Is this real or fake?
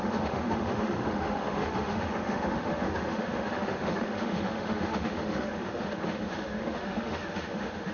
fake